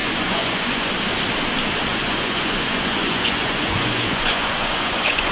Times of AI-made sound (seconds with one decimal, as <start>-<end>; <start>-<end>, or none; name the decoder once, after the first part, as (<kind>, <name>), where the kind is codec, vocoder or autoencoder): 0.0-0.9 (vocoder, Vocos); 1.9-5.3